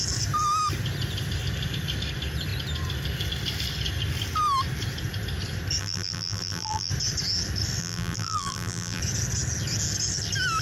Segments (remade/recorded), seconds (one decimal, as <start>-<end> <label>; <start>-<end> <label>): 0.0-5.8 recorded; 5.8-6.9 remade; 6.9-7.8 recorded; 7.8-9.0 remade; 9.0-10.6 recorded